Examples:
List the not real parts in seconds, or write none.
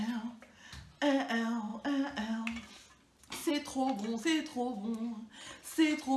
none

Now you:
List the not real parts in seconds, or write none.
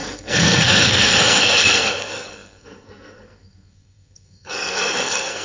0.0-5.4 (codec, SNAC)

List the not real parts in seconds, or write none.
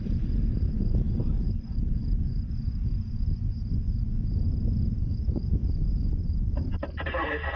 0.0-2.0 (vocoder, BigVGAN v2); 5.0-5.6; 6.2-7.6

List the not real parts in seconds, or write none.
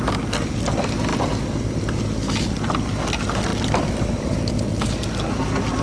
1.1-2.0 (vocoder, BigVGAN v2); 3.5-4.5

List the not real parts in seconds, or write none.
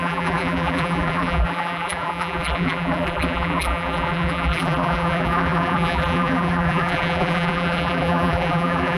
0.0-9.0 (vocoder, BigVGAN v2)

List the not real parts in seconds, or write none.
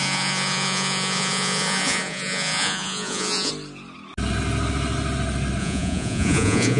0.0-3.5 (vocoder, Vocos); 5.6-6.8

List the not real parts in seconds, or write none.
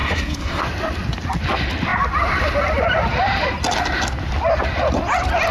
0.0-0.6 (codec, SNAC)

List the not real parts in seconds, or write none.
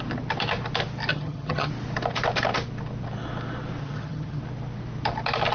1.1-1.7 (vocoder, HiFi-GAN); 3.8-4.4